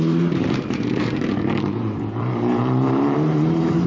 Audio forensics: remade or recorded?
remade